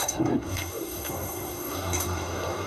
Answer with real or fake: fake